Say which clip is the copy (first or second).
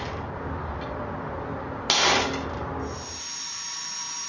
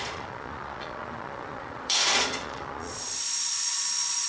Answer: second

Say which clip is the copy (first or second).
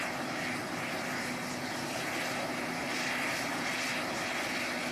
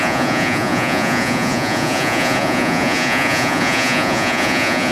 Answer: second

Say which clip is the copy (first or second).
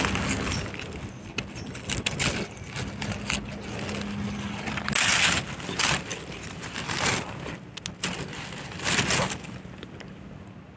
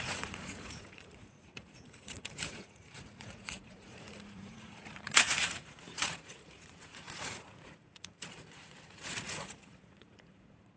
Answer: second